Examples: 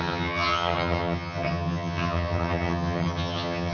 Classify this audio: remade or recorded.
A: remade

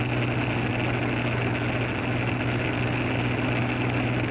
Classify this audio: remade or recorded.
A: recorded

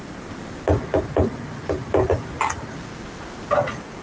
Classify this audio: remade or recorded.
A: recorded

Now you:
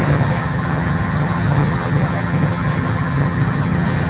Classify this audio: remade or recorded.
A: remade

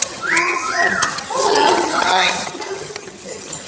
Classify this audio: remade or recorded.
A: remade